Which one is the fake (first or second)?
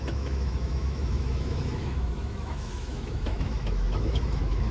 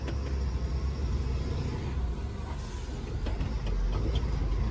first